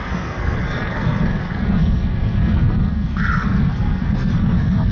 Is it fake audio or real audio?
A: fake